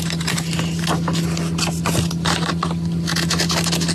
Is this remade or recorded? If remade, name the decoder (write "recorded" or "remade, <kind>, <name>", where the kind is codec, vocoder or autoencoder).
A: recorded